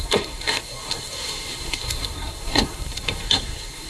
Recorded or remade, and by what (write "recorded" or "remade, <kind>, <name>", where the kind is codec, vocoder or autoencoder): remade, codec, SNAC